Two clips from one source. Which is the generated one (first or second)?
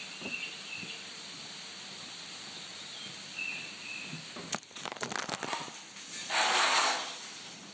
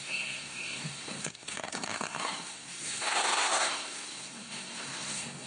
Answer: second